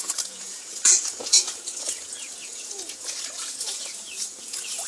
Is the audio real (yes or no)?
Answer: no